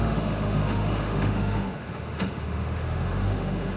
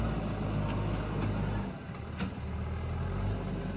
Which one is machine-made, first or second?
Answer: first